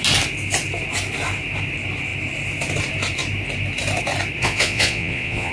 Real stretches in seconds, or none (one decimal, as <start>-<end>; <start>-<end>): 0.0-4.4